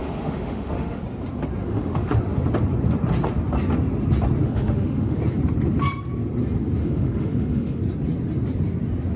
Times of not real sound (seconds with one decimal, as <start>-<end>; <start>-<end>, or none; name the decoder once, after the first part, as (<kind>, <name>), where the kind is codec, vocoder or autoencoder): 0.0-1.0 (autoencoder, DAC-VAE); 1.6-2.2; 4.4-5.2; 6.8-7.8